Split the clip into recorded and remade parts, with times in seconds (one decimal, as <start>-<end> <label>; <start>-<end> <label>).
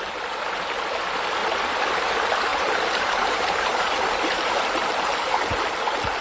0.0-2.5 recorded; 2.5-4.5 remade; 4.5-6.2 recorded